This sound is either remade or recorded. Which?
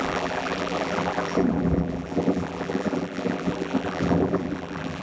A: remade